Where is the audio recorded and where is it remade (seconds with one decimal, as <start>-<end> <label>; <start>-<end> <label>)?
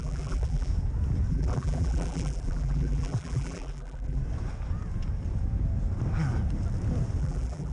0.0-0.7 remade; 0.7-1.3 recorded; 1.3-4.2 remade; 4.2-7.2 recorded; 7.2-7.7 remade